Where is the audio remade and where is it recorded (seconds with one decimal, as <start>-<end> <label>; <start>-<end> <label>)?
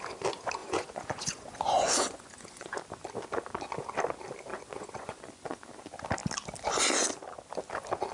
0.0-0.6 recorded; 0.6-2.8 remade; 2.8-4.5 recorded; 4.5-5.6 remade; 5.6-8.1 recorded